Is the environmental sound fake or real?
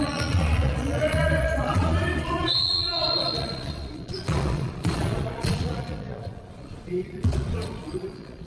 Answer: fake